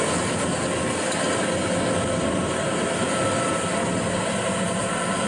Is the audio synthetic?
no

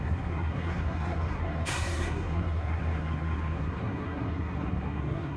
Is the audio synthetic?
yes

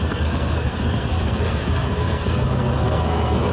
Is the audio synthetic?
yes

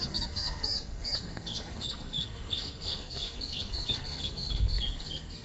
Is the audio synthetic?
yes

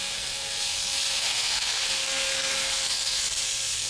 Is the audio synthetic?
yes